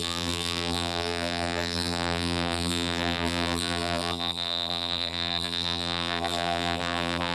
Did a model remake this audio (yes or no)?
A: yes